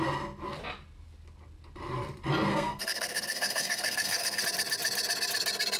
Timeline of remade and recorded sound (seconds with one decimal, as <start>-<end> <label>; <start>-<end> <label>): 0.0-2.5 recorded; 2.5-4.4 remade; 4.4-5.8 recorded